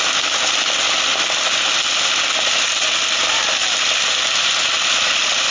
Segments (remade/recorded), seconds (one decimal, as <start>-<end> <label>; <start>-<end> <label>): 0.0-5.5 recorded